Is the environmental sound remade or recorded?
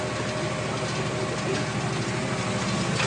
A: recorded